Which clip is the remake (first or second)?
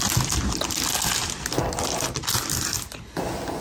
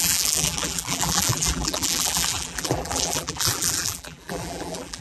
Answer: second